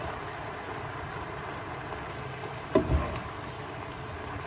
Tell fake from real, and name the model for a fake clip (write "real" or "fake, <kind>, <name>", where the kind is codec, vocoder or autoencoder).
real